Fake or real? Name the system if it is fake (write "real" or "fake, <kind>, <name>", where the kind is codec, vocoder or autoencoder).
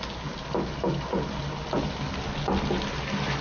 real